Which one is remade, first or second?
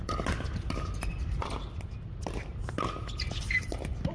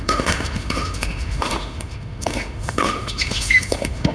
second